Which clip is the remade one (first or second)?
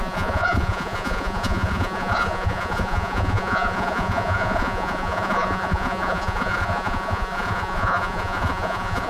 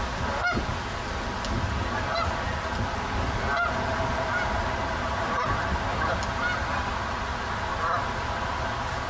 first